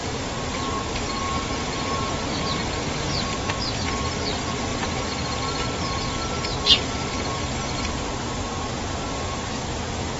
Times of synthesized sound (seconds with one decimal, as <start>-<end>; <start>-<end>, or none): 0.0-3.6; 4.7-5.6